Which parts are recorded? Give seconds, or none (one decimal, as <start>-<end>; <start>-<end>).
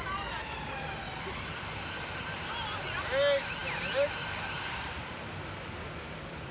0.0-6.5